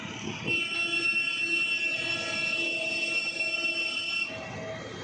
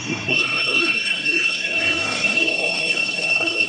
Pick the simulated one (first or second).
second